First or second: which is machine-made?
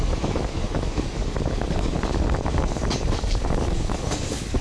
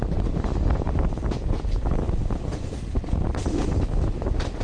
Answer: first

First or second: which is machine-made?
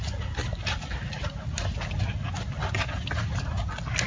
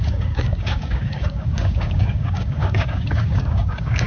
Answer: second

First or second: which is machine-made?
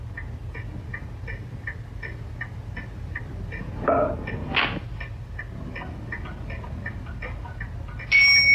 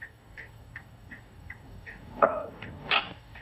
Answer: second